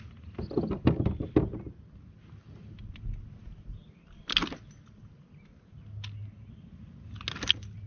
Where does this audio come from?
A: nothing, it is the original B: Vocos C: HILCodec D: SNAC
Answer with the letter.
A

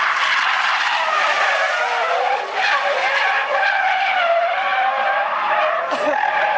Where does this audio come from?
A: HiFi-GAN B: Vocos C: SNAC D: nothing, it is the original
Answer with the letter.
D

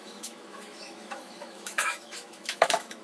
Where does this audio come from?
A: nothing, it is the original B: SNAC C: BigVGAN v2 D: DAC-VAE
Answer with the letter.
D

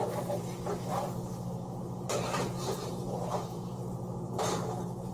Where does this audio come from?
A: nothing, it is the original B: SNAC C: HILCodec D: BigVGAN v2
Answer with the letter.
D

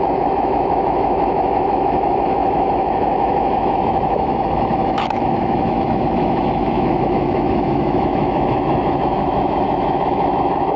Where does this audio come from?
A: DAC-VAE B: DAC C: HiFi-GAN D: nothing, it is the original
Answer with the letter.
A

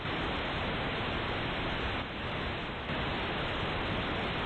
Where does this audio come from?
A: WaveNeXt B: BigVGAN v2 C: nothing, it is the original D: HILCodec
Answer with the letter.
C